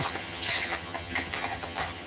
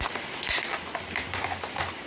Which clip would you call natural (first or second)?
second